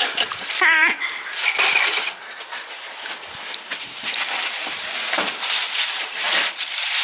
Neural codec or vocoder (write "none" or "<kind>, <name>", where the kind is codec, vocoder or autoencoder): vocoder, BigVGAN v2